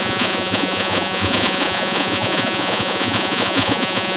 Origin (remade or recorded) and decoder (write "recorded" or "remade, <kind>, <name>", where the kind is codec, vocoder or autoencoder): remade, vocoder, Vocos